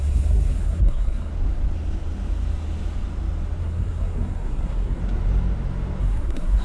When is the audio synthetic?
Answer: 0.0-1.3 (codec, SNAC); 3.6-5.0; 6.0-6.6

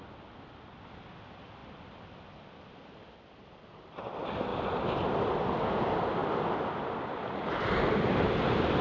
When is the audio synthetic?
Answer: 1.6-2.2 (vocoder, BigVGAN v2)